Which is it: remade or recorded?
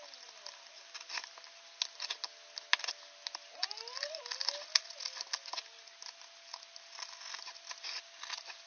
recorded